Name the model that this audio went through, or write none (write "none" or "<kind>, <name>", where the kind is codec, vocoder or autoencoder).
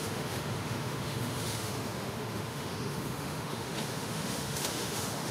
autoencoder, DAC-VAE